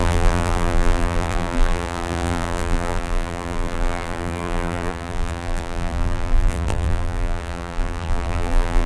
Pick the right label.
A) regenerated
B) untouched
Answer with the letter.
A